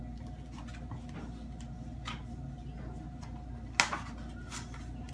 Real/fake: real